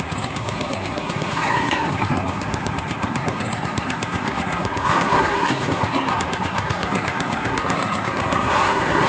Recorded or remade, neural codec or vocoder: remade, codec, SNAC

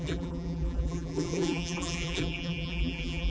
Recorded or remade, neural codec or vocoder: remade, vocoder, BigVGAN v2